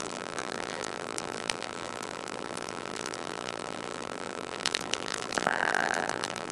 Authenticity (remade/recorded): remade